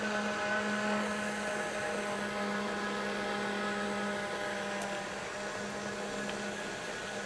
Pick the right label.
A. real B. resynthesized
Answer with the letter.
A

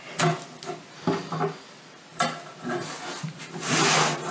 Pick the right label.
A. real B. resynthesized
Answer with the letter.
A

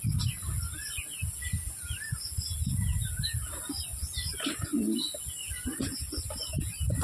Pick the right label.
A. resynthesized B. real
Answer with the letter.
B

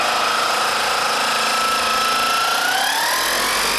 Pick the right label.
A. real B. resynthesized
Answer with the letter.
A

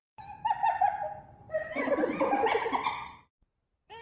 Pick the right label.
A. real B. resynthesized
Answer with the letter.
A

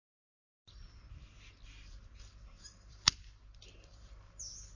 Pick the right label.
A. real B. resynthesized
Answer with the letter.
B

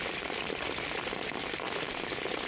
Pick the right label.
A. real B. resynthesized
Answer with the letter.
A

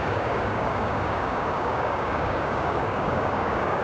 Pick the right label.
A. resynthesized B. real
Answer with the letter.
A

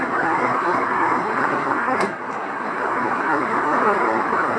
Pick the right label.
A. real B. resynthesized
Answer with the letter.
B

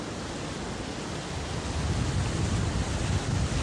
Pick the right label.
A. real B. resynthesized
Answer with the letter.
A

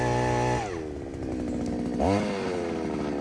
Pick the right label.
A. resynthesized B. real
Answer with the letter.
B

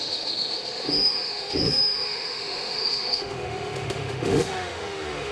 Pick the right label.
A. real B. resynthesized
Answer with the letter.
B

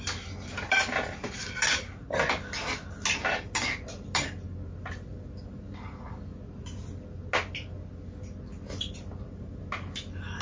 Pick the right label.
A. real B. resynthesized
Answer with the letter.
A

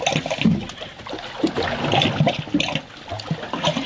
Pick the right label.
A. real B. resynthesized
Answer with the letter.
A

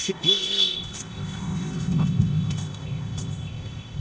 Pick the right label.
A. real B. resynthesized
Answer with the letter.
B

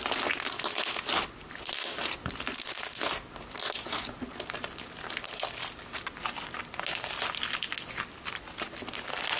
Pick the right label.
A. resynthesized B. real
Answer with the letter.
B